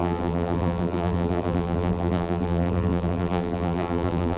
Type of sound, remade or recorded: remade